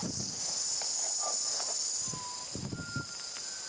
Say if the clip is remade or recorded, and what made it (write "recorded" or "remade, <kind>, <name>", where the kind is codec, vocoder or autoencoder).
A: recorded